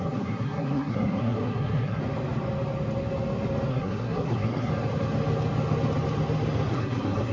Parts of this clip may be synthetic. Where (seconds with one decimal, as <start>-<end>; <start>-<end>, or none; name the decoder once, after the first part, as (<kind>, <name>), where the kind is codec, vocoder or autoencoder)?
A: 0.0-2.0 (codec, SNAC); 3.7-4.7; 6.7-7.3